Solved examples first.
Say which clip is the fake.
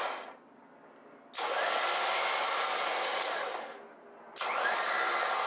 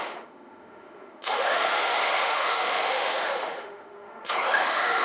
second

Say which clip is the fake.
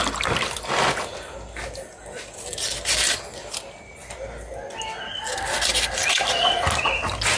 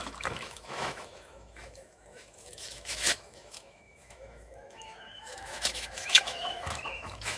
second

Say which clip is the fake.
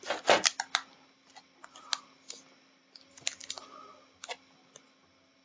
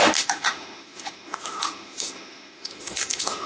second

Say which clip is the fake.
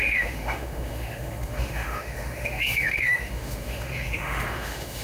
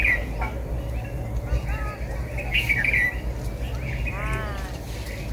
first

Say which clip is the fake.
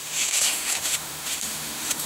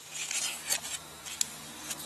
first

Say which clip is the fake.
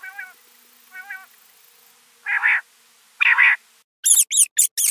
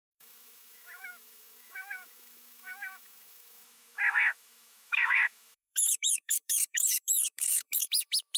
second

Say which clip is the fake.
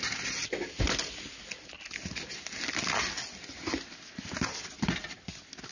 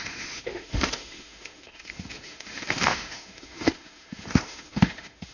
second